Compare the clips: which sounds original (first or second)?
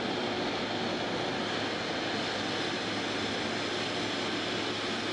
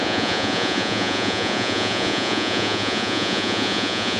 first